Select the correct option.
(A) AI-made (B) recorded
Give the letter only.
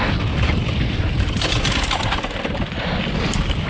B